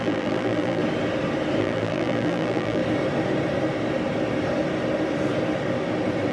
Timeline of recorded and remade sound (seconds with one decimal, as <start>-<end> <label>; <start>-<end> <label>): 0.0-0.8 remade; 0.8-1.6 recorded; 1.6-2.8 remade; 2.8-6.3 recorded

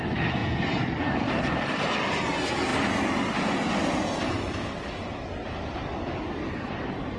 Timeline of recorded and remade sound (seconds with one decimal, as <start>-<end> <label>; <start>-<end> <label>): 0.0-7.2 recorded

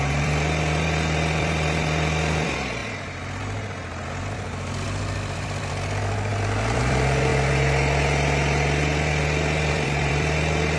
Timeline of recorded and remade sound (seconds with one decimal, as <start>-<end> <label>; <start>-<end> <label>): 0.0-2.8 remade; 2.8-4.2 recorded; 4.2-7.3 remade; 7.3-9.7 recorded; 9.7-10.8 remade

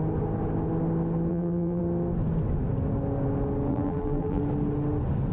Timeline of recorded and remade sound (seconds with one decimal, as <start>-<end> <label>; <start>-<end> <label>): 0.0-1.3 recorded; 1.3-1.8 remade; 1.8-3.7 recorded; 3.7-4.4 remade; 4.4-5.3 recorded

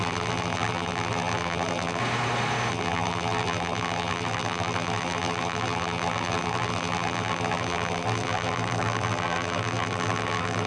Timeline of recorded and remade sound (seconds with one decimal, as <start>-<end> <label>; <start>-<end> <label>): 0.0-2.0 remade; 2.0-2.7 recorded; 2.7-10.7 remade

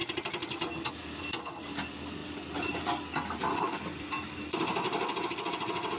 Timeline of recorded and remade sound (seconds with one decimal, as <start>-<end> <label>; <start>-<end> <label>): 0.0-0.7 remade; 0.7-2.2 recorded; 2.2-4.6 remade; 4.6-6.0 recorded